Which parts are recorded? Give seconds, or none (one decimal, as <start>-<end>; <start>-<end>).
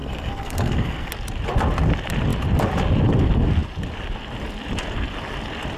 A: 1.1-5.8